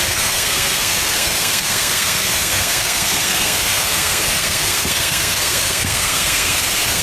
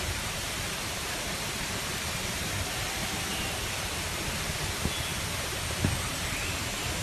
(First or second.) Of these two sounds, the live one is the second